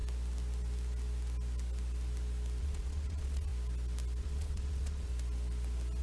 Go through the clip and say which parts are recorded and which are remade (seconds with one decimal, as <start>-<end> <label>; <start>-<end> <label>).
0.0-2.6 recorded; 2.6-3.5 remade; 3.5-4.2 recorded; 4.2-5.1 remade; 5.1-6.0 recorded